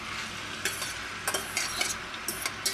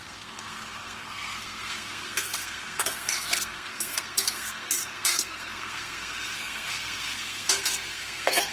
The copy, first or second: second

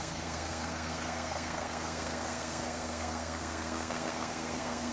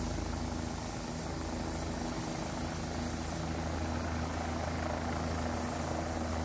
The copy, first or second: first